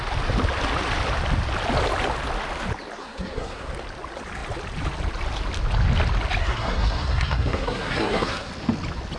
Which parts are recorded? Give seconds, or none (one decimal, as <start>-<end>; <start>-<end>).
0.0-3.0; 3.7-6.4; 8.5-9.2